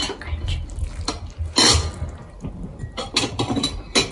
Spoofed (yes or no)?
no